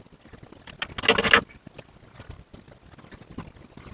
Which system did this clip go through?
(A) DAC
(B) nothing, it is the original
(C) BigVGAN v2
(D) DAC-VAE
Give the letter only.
B